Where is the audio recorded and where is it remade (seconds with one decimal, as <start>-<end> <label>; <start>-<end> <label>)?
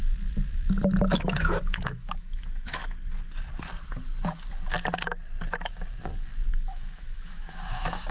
0.0-1.0 recorded; 1.0-2.8 remade; 2.8-6.5 recorded; 6.5-8.1 remade